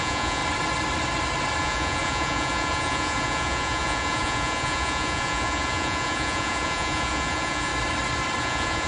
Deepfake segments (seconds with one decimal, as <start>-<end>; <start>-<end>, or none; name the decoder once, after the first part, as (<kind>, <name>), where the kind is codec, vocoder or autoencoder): 0.0-0.4 (vocoder, Vocos); 1.6-7.7; 8.4-8.9

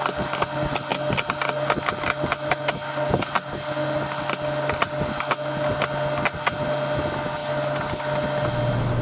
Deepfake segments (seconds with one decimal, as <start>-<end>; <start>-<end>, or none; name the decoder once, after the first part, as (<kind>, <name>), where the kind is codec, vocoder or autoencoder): none